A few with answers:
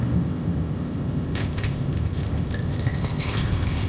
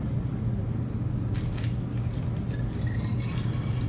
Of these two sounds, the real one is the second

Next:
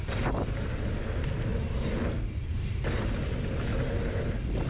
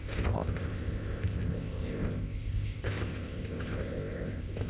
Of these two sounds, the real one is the first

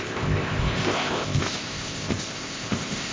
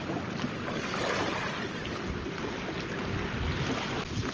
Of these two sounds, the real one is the second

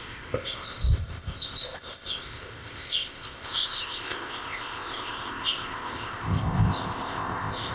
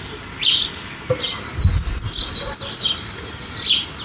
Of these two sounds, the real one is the second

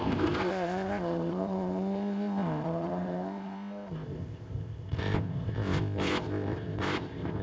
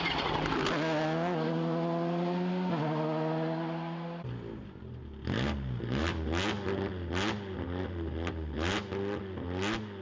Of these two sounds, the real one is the second